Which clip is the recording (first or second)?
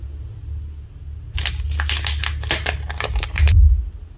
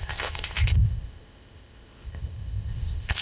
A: first